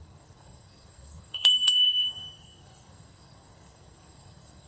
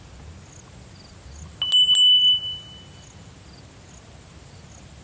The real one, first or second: second